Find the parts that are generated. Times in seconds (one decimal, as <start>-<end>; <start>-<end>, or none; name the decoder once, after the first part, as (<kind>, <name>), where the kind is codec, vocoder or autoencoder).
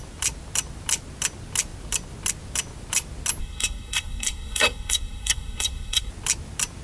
3.4-6.1 (codec, SNAC)